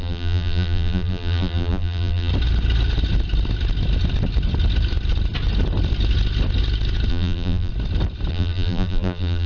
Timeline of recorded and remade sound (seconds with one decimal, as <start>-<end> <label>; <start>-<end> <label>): 0.0-2.3 remade; 2.3-7.1 recorded; 7.1-7.7 remade; 7.7-8.3 recorded; 8.3-9.5 remade